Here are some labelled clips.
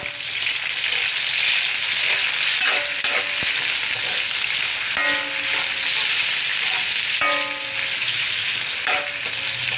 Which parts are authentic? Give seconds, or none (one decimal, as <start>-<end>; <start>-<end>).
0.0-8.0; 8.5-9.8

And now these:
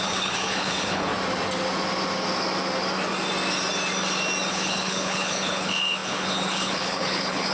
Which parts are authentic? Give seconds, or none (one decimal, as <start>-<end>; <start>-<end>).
1.1-4.5

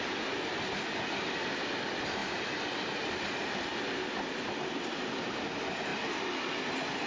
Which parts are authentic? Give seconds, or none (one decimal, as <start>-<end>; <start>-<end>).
0.0-7.1

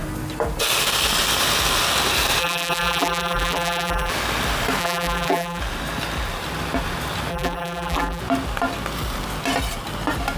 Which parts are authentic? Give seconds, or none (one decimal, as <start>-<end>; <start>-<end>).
0.0-2.4; 4.1-4.8; 5.6-7.3; 8.2-10.4

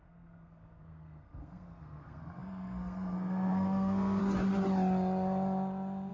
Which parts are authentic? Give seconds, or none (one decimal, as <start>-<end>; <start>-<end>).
4.2-6.1

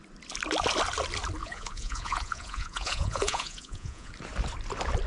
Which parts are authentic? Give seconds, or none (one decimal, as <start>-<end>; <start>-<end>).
0.0-1.4; 4.1-5.1

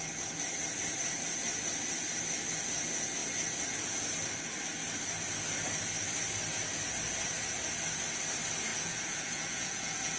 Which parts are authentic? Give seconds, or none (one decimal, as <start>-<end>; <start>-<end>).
0.0-8.7